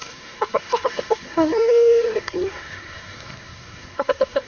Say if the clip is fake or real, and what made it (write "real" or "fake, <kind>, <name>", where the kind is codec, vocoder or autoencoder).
fake, codec, SNAC